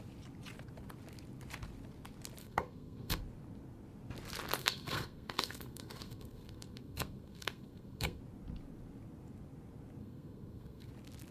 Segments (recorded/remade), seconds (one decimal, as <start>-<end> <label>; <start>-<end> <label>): 0.0-2.4 recorded; 2.4-3.2 remade; 3.2-4.6 recorded; 4.6-8.2 remade; 8.2-10.0 recorded; 10.0-10.9 remade; 10.9-11.3 recorded